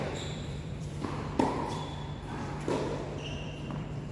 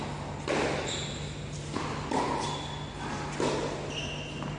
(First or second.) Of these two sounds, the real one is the second